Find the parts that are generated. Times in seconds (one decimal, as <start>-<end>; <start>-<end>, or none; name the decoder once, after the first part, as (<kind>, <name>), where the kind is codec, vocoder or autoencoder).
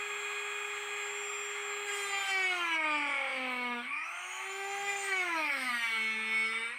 3.3-5.7 (autoencoder, DAC-VAE)